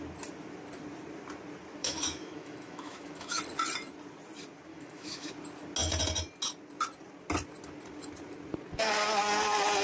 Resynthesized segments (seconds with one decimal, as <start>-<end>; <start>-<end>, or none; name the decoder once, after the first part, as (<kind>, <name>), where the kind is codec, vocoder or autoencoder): 1.8-3.4 (autoencoder, DAC-VAE); 4.7-5.3